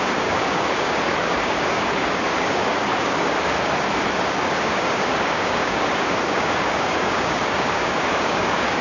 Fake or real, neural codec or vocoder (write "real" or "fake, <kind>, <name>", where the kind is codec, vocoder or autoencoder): fake, codec, DAC